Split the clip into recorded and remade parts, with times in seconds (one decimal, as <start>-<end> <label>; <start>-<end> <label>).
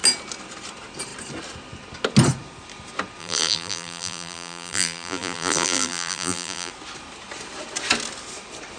0.0-3.2 recorded; 3.2-6.7 remade; 6.7-8.8 recorded